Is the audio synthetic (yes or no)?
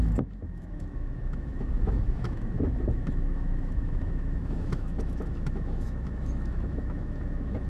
yes